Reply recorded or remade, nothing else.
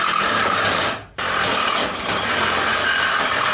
recorded